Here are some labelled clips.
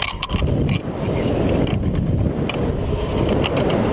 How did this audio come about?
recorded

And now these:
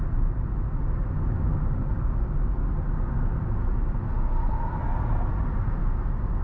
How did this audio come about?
recorded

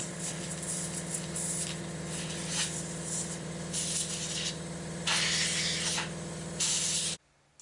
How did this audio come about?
recorded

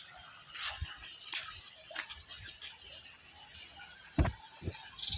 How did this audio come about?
recorded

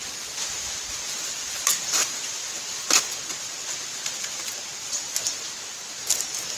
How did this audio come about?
recorded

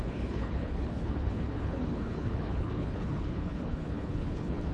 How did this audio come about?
remade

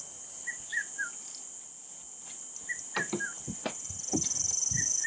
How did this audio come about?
recorded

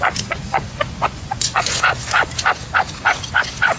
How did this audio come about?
remade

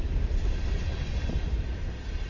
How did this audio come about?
remade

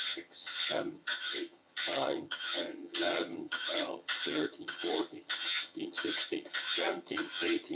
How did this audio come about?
remade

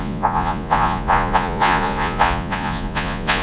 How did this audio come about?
remade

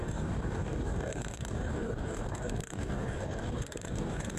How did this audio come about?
remade